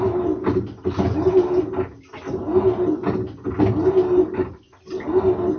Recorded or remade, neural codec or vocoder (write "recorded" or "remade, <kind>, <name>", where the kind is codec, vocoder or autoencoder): recorded